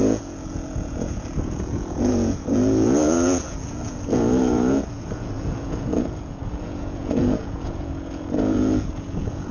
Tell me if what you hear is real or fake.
fake